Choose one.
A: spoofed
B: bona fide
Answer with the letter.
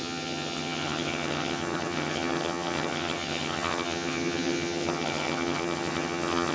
A